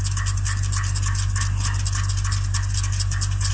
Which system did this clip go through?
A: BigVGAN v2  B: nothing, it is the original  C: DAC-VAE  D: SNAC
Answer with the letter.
B